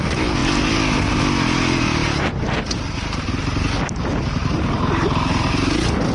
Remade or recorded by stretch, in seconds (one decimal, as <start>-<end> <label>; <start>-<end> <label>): 0.0-6.1 recorded